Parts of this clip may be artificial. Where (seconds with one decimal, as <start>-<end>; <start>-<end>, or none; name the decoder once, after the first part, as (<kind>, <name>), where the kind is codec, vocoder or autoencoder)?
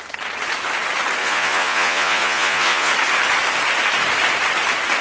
1.2-2.9 (vocoder, Vocos)